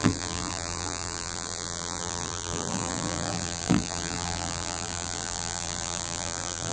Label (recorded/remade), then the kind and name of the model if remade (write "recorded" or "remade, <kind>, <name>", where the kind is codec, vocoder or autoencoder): remade, vocoder, BigVGAN v2